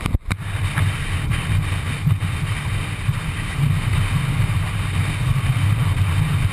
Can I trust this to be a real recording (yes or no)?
yes